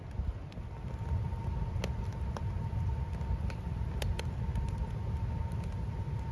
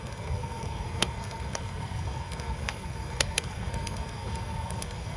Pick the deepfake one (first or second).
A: second